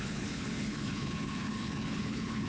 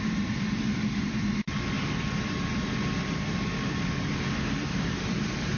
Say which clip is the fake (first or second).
first